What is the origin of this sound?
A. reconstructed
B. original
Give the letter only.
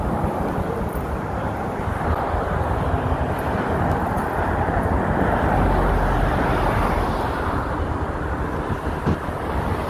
B